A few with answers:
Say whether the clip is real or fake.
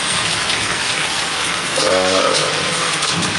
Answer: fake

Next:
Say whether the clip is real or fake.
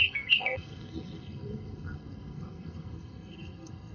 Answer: fake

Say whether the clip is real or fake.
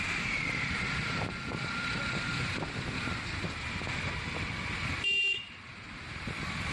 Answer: real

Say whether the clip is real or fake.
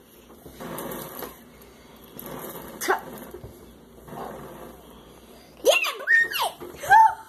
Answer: real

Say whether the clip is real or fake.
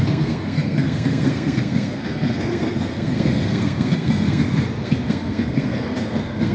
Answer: fake